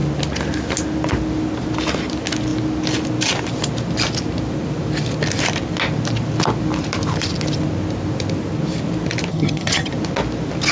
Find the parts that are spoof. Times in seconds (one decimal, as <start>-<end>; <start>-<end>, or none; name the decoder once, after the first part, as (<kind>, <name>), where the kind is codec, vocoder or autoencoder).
9.3-9.9 (vocoder, HiFi-GAN)

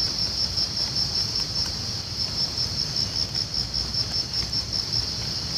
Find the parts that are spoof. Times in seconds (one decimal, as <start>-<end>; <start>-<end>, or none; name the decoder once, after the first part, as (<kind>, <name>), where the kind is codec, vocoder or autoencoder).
0.0-2.8 (vocoder, BigVGAN v2); 3.9-4.6

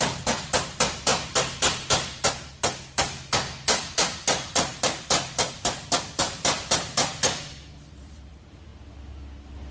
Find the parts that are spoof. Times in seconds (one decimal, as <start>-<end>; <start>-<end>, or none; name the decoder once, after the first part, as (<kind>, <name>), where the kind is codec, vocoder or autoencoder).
0.0-1.1 (vocoder, BigVGAN v2); 6.2-8.7

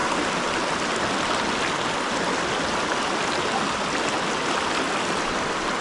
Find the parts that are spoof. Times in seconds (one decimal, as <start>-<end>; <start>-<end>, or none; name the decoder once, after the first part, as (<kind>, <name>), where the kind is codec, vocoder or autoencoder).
none